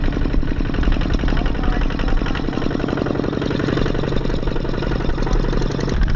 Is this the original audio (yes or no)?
yes